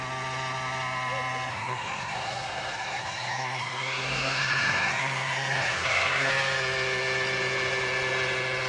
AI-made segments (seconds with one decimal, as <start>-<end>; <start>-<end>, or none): 1.5-6.3